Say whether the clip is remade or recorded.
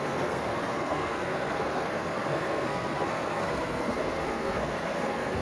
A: remade